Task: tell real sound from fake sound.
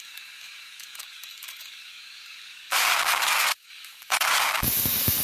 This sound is fake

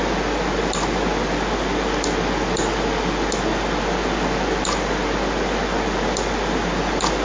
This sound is real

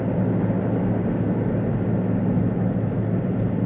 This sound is real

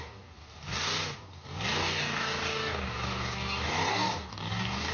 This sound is fake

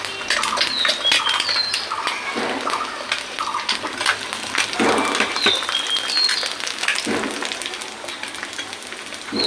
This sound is real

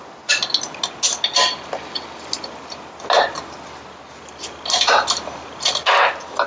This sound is real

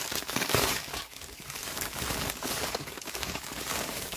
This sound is fake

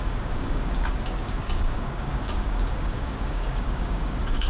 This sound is fake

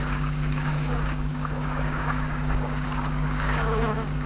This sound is fake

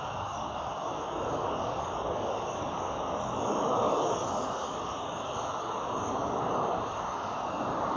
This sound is fake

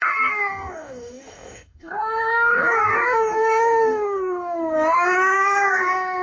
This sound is fake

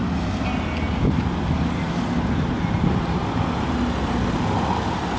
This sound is real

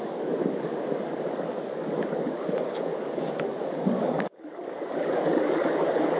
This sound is fake